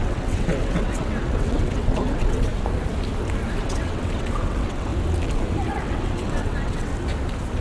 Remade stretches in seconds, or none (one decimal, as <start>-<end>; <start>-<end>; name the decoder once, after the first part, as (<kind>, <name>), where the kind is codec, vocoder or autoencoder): 0.0-2.5 (vocoder, WaveNeXt); 3.6-4.9; 5.7-6.9